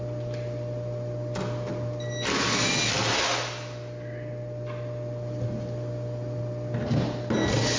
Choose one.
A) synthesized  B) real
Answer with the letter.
B